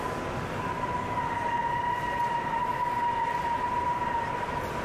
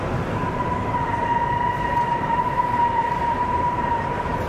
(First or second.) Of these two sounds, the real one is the first